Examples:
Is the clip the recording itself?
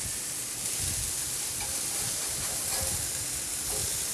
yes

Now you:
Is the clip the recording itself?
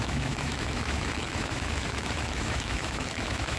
no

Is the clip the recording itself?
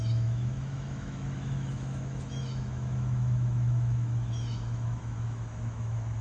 no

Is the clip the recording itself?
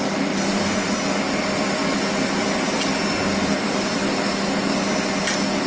yes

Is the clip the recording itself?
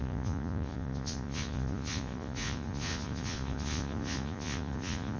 no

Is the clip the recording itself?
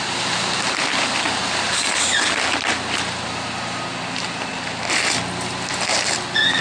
yes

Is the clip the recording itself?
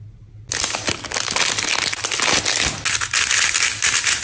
yes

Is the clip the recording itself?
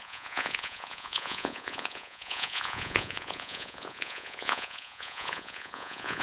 no